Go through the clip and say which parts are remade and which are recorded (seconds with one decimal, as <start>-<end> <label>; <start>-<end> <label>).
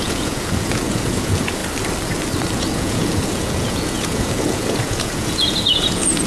0.0-1.6 remade; 1.6-2.6 recorded; 2.6-6.3 remade